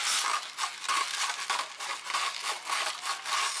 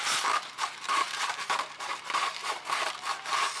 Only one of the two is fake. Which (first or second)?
second